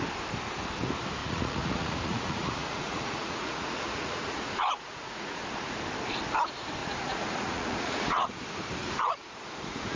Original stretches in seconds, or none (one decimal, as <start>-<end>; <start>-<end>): 0.0-1.2; 5.4-6.8; 8.3-8.8